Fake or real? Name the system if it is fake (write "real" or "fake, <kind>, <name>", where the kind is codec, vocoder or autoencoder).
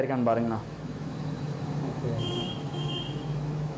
fake, autoencoder, DAC-VAE